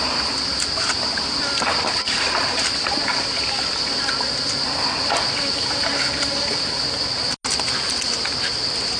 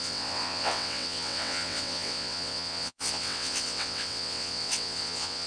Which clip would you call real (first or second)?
first